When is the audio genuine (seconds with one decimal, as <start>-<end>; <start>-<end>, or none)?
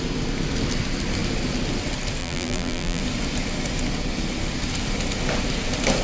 0.0-2.2; 3.0-6.0